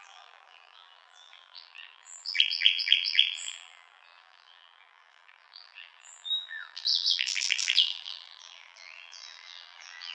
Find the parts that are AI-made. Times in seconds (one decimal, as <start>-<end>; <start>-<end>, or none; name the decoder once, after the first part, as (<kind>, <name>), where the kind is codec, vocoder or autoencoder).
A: 0.0-10.1 (vocoder, BigVGAN v2)